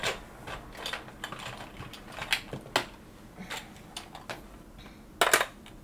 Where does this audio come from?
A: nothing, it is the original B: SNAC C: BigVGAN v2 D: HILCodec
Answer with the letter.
A